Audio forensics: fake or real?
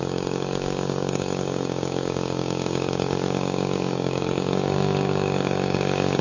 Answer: fake